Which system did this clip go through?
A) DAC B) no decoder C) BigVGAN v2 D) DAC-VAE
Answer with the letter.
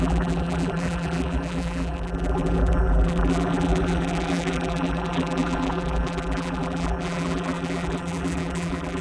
C